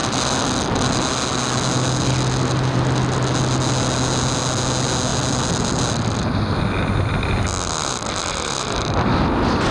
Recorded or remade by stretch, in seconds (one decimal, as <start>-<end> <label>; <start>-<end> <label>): 0.0-9.7 recorded